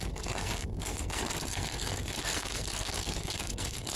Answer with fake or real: fake